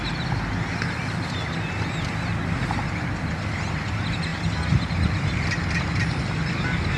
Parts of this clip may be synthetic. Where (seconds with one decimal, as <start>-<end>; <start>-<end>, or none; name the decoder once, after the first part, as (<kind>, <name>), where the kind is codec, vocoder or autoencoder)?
none